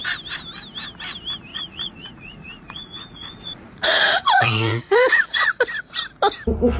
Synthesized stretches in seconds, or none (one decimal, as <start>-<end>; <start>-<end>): 1.5-5.6